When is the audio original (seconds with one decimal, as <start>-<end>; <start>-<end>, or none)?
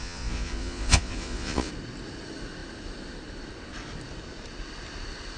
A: 1.7-5.4